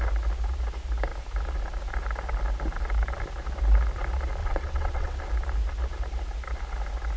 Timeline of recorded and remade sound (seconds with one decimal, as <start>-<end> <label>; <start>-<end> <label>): 0.0-4.4 recorded; 4.4-5.2 remade; 5.2-7.2 recorded